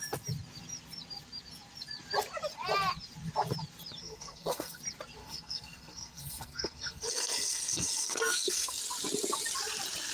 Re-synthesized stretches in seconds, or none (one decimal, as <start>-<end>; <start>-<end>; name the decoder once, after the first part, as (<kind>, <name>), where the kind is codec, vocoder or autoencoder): 4.0-4.8 (codec, SNAC); 5.2-8.8